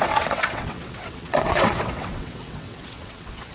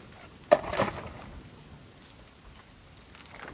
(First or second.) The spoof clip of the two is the first